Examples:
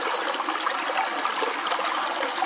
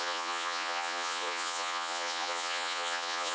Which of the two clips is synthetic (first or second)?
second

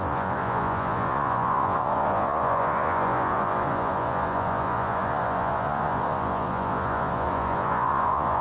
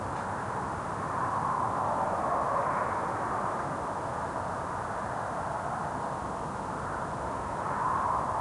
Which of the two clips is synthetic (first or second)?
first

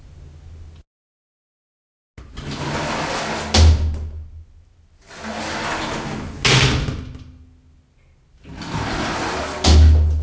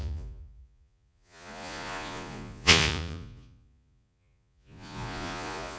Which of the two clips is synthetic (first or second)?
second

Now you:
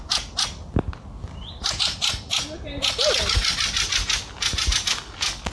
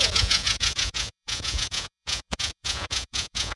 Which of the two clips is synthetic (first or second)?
second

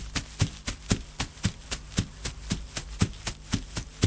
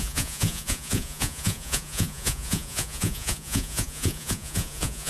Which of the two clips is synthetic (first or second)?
second